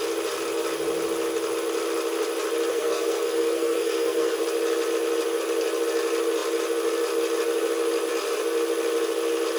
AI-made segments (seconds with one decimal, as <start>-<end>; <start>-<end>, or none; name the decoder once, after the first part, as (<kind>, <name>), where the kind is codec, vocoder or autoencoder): 2.7-4.4 (codec, SNAC)